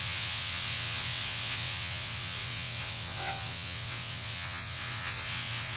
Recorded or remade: remade